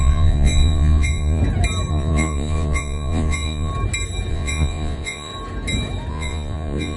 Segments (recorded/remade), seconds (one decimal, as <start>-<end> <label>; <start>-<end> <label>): 0.0-1.4 remade; 1.4-1.9 recorded; 1.9-3.7 remade; 3.7-4.3 recorded; 4.3-5.3 remade; 5.3-6.1 recorded; 6.1-7.0 remade